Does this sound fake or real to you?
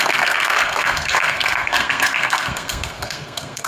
fake